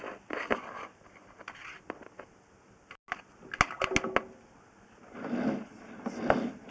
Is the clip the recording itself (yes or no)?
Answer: yes